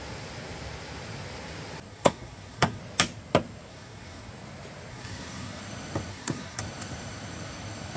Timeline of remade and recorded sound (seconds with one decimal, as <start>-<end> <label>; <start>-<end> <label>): 0.0-1.9 recorded; 1.9-2.8 remade; 2.8-3.7 recorded; 3.7-4.3 remade; 4.3-4.9 recorded; 4.9-5.6 remade; 5.6-6.1 recorded; 6.1-6.6 remade; 6.6-8.0 recorded